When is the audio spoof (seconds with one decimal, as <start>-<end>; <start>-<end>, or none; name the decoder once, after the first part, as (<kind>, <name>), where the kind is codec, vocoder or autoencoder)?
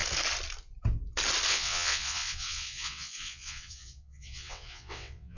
1.5-5.4 (vocoder, WaveNeXt)